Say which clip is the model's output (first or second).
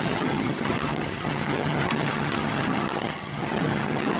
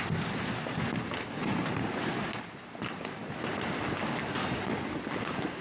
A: first